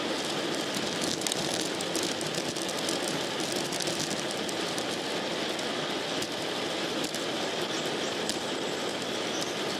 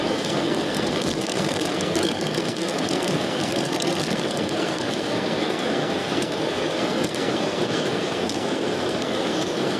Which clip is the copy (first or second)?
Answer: second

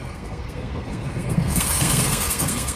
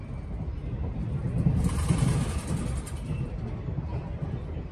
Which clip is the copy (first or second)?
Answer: first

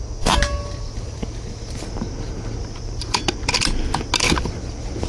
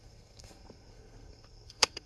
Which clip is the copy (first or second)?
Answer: second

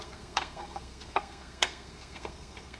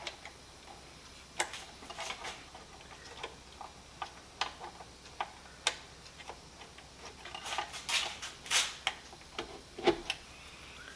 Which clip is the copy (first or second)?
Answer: first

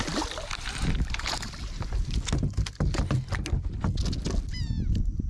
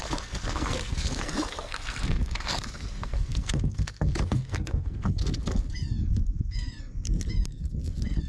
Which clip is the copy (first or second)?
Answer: second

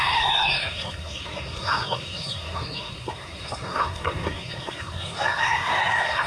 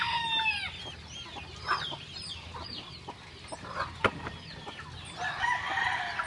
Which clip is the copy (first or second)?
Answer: first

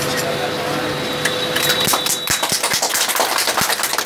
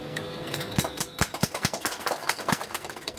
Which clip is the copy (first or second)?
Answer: second